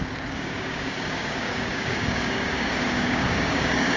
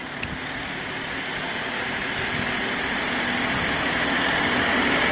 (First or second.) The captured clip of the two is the second